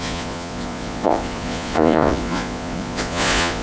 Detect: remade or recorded remade